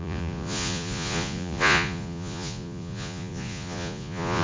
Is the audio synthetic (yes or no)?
yes